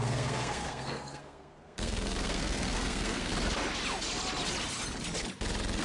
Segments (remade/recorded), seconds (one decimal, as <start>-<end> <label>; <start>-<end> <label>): 0.0-3.3 remade; 3.3-5.8 recorded